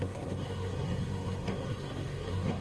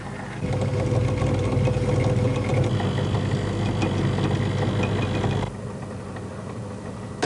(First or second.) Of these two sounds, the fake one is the first